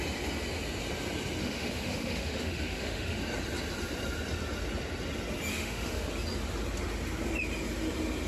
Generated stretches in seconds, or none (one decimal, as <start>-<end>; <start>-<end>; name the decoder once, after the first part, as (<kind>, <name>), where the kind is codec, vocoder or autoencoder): 1.4-3.2 (autoencoder, DAC-VAE); 5.5-6.1